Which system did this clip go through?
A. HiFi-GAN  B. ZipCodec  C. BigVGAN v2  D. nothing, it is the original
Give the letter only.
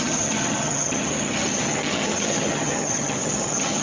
A